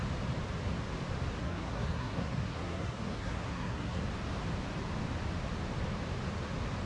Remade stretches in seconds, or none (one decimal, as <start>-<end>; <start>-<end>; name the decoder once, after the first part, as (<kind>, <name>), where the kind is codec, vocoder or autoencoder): 1.4-4.0 (codec, SNAC)